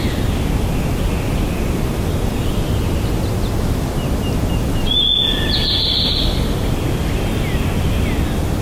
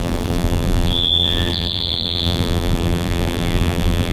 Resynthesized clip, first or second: second